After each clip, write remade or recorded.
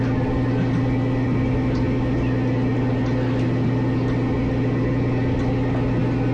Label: recorded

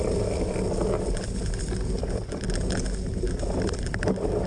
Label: recorded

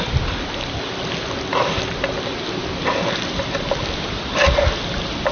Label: recorded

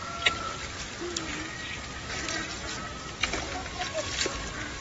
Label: recorded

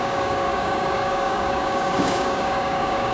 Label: remade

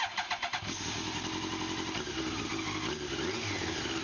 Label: recorded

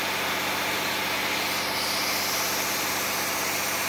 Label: recorded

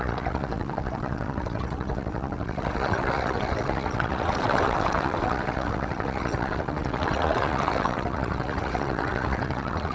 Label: remade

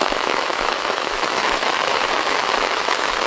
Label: remade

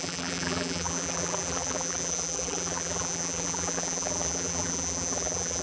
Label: remade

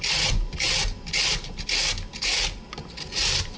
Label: recorded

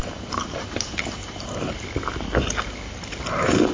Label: recorded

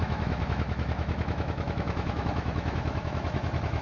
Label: remade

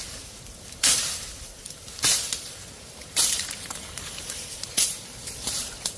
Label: remade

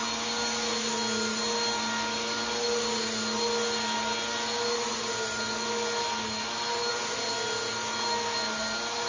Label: recorded